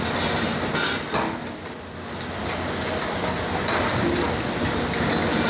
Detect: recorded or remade recorded